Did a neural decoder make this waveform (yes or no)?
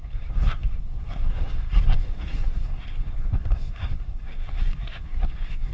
yes